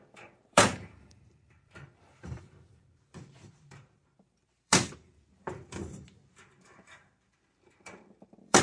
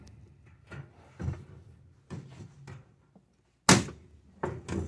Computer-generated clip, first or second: first